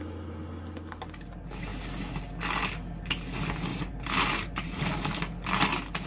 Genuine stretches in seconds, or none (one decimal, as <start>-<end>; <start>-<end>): 0.0-3.7; 4.8-6.1